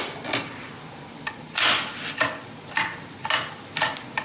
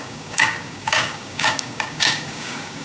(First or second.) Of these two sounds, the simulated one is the second